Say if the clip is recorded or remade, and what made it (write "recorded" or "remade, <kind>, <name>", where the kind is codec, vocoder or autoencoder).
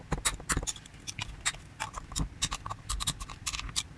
recorded